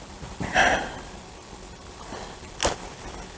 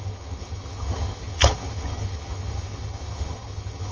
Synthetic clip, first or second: second